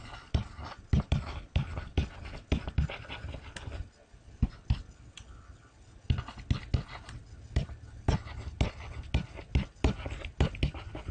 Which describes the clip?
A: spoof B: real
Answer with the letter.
B